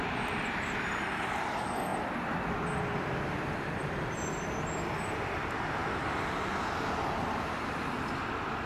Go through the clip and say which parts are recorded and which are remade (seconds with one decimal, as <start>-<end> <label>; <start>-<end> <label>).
0.0-1.9 recorded; 1.9-5.2 remade; 5.2-5.8 recorded; 5.8-6.4 remade; 6.4-8.7 recorded